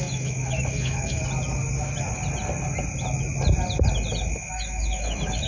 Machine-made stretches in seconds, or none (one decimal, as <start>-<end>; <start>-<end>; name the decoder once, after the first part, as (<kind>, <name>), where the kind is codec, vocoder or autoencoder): 0.0-1.2 (autoencoder, DAC-VAE); 4.5-5.5